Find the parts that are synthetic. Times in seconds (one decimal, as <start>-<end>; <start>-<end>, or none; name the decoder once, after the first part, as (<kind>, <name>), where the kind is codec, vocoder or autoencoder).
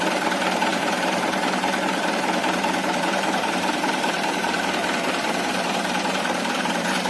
0.0-7.1 (vocoder, BigVGAN v2)